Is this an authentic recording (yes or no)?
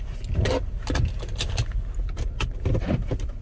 yes